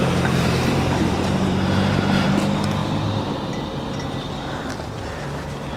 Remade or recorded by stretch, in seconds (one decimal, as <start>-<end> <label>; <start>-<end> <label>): 0.0-2.3 remade; 2.3-5.8 recorded